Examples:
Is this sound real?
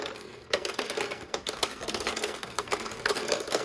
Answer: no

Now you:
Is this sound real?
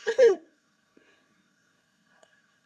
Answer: no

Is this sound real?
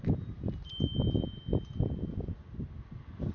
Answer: yes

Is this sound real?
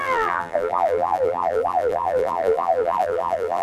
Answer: no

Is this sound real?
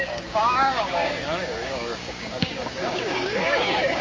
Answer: no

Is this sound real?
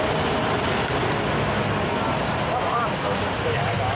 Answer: yes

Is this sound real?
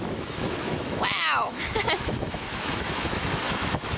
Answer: no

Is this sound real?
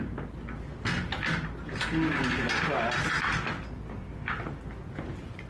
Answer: yes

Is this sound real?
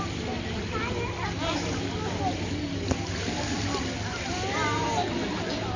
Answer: yes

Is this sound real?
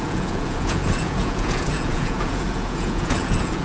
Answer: no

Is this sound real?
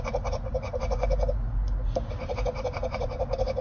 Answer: yes